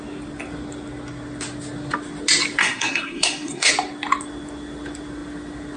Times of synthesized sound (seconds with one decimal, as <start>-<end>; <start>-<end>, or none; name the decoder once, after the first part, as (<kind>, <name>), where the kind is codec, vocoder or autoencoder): 2.6-3.7 (codec, SNAC)